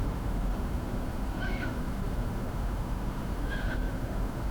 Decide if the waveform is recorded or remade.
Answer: remade